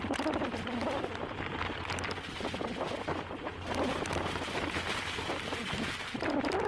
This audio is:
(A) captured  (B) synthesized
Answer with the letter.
A